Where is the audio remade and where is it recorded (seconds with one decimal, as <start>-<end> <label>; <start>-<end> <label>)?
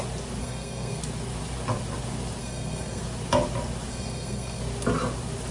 0.0-0.4 recorded; 0.4-1.0 remade; 1.0-2.4 recorded; 2.4-3.0 remade; 3.0-3.9 recorded; 3.9-4.6 remade; 4.6-5.5 recorded